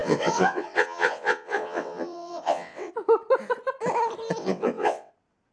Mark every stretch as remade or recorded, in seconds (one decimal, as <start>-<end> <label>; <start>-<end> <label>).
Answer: 0.0-2.9 remade; 2.9-4.4 recorded; 4.4-5.1 remade; 5.1-5.5 recorded